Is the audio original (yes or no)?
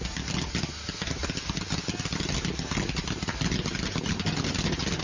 yes